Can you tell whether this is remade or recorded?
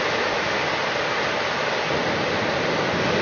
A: recorded